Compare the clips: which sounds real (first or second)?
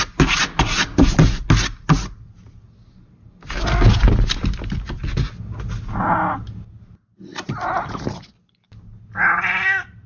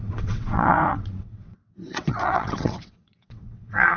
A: first